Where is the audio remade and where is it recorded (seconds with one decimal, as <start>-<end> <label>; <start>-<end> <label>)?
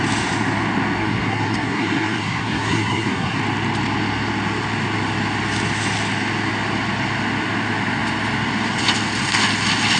0.0-1.0 recorded; 1.0-3.4 remade; 3.4-10.0 recorded